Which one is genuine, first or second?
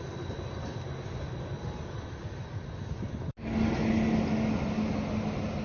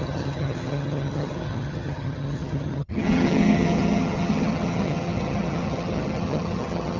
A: first